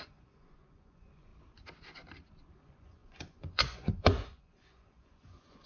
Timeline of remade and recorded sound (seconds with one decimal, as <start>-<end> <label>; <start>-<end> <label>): 0.0-1.3 remade; 1.3-2.5 recorded; 2.5-5.7 remade